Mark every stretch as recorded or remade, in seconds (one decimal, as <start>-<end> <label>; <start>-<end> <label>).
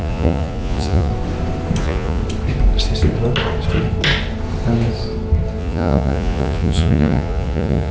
0.0-1.1 remade; 1.1-1.8 recorded; 1.8-2.2 remade; 2.2-5.6 recorded; 5.6-7.9 remade